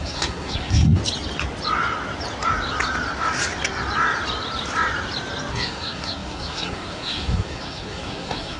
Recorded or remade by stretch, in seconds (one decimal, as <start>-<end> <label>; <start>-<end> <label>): 0.0-1.0 remade; 1.0-5.5 recorded; 5.5-8.6 remade

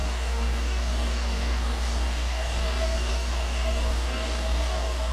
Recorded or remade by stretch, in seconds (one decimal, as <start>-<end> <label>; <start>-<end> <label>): 0.0-5.1 remade

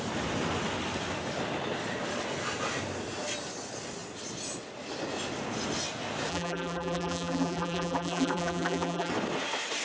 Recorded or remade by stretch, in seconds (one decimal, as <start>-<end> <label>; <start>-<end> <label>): 0.0-6.3 recorded; 6.3-9.1 remade; 9.1-9.8 recorded

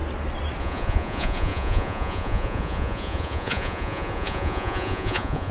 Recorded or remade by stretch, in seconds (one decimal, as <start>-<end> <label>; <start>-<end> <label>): 0.0-0.6 recorded; 0.6-5.5 remade

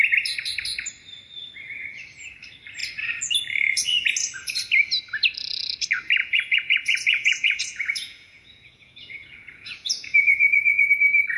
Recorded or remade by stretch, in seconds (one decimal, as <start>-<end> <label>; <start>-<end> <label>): 0.0-6.2 recorded; 6.2-10.9 remade; 10.9-11.4 recorded